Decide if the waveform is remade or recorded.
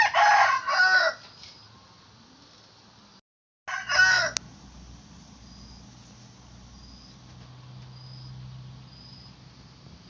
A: recorded